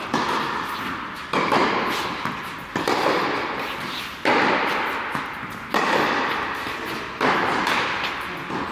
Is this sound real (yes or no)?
yes